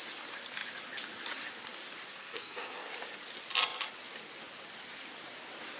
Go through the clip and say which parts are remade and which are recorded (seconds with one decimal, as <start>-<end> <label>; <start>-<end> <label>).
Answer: 0.0-2.2 recorded; 2.2-2.9 remade; 2.9-5.8 recorded